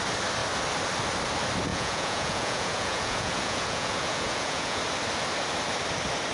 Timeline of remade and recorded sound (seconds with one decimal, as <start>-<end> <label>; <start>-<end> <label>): 0.0-1.7 recorded; 1.7-4.8 remade; 4.8-6.3 recorded